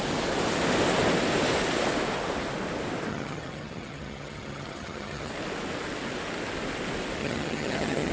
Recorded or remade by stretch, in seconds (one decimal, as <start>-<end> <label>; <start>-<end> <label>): 0.0-3.1 recorded; 3.1-5.3 remade; 5.3-7.2 recorded; 7.2-8.1 remade